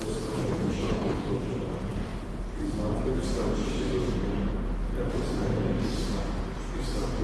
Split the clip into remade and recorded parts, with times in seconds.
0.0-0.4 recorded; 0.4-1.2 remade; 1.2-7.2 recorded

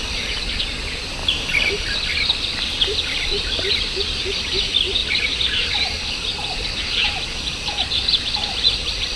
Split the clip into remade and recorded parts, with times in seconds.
0.0-1.2 recorded; 1.2-3.5 remade; 3.5-5.0 recorded; 5.0-7.2 remade; 7.2-8.4 recorded; 8.4-9.2 remade